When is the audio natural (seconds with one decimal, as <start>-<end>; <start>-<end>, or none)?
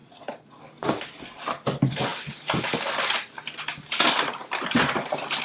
0.6-5.4